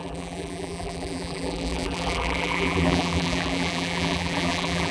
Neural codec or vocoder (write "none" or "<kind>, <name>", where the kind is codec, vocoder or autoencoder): vocoder, BigVGAN v2